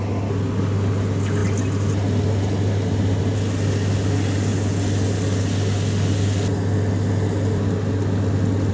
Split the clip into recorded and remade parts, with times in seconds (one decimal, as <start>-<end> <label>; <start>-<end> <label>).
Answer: 0.0-8.7 recorded